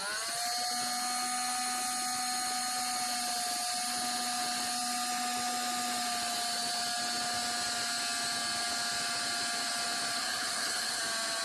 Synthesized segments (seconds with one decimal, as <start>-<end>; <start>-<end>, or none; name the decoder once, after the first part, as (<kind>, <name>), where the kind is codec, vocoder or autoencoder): 10.2-11.0 (codec, HILCodec)